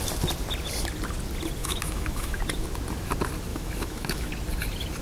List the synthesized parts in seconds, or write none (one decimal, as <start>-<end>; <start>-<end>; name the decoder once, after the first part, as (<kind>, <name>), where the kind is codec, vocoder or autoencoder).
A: 1.6-2.4 (autoencoder, DAC-VAE); 3.5-4.3